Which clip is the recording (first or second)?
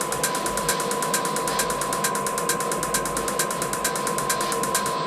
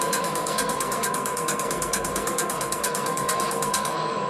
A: first